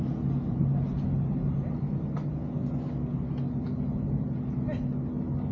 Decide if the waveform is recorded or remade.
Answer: recorded